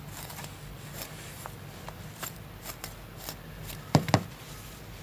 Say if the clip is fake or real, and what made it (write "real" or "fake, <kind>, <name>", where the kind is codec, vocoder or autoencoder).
real